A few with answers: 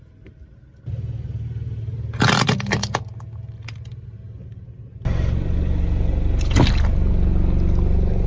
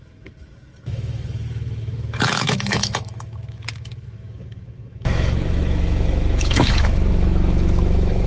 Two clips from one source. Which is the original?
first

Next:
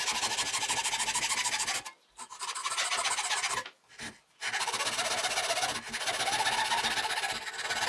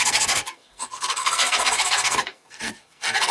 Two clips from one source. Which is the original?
first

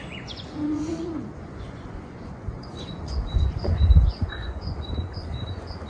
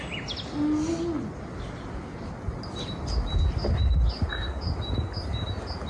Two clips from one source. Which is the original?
second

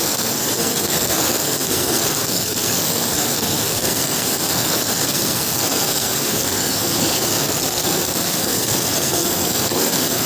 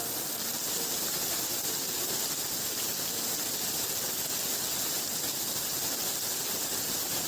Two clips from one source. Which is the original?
second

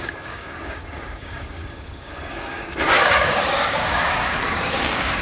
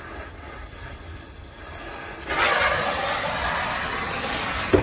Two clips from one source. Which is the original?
second